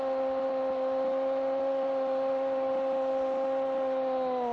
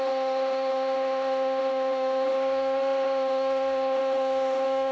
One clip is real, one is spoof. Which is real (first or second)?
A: first